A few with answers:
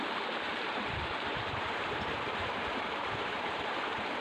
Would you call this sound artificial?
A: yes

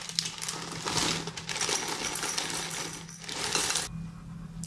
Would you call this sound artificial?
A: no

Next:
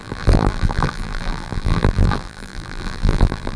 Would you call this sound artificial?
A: yes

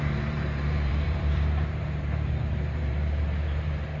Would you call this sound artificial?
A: yes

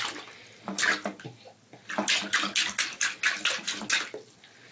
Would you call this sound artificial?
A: no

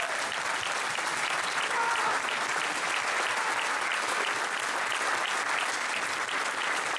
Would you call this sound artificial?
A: yes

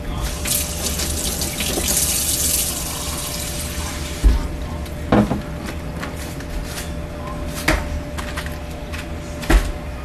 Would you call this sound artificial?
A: no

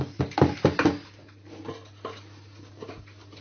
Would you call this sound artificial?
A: no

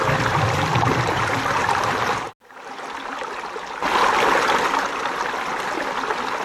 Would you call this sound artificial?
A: no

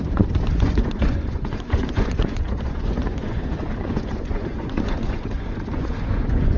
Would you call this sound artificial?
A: yes